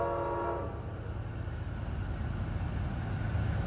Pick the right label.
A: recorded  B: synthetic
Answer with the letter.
A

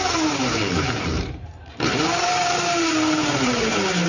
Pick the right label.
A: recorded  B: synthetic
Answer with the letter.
B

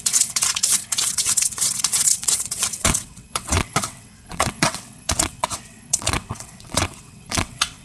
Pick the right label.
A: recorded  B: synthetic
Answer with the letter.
B